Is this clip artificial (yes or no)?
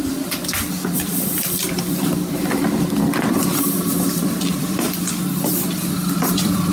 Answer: yes